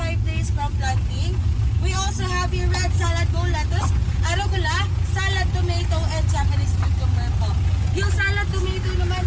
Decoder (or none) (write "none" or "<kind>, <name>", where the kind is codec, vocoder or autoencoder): none